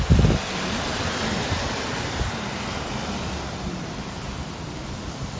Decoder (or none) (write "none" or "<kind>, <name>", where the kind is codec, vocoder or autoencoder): none